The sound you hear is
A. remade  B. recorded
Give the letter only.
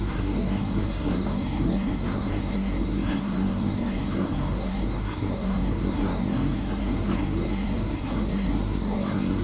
A